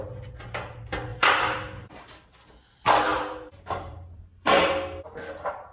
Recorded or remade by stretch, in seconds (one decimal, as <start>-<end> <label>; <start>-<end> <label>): 0.0-1.1 recorded; 1.1-2.2 remade; 2.2-3.1 recorded; 3.1-4.7 remade; 4.7-5.7 recorded